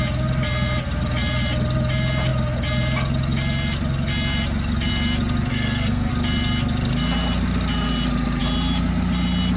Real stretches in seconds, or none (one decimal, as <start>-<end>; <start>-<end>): 0.0-5.5; 6.1-9.6